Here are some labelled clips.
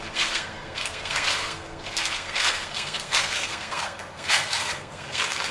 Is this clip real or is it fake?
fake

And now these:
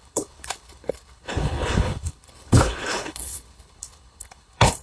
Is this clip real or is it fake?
fake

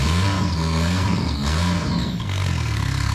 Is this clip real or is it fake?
fake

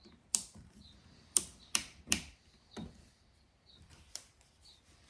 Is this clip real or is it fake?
fake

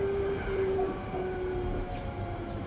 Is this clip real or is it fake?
fake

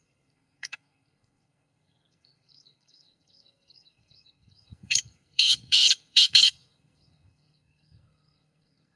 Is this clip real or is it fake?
fake